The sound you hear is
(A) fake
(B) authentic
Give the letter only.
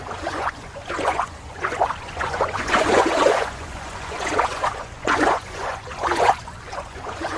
A